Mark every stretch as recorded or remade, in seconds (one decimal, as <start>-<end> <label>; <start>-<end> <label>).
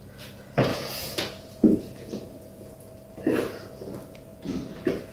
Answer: 0.0-0.7 recorded; 0.7-2.9 remade; 2.9-5.1 recorded